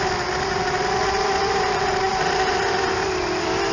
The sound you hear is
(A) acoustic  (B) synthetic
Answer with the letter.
A